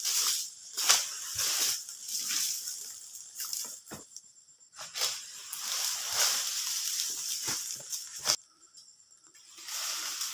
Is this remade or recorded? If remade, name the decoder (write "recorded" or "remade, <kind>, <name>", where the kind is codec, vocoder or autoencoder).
remade, vocoder, BigVGAN v2